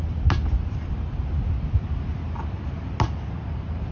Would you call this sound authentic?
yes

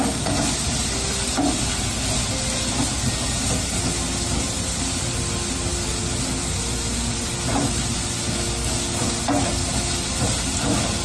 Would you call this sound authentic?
yes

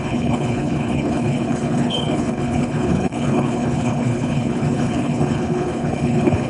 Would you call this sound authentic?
no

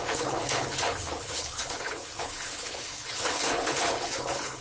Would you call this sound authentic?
no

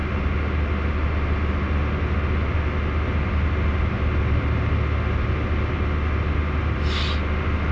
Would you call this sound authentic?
yes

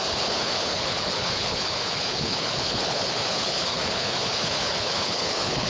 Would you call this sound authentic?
no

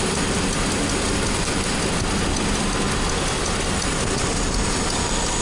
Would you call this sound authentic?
yes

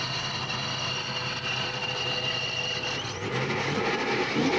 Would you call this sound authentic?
yes